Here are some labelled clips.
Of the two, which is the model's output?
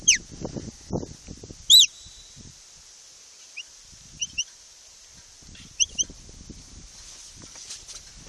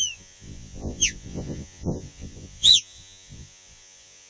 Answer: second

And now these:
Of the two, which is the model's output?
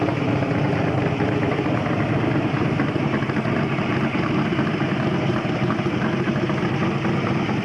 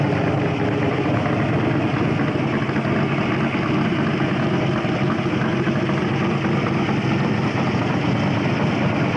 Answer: first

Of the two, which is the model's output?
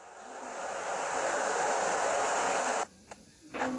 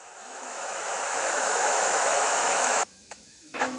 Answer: second